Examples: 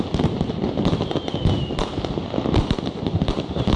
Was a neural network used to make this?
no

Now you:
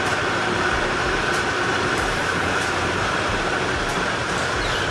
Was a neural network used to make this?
yes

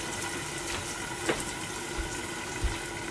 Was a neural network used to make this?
no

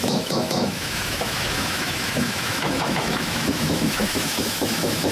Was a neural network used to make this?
yes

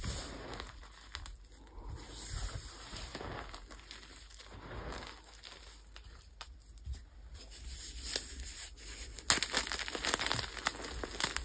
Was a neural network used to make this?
no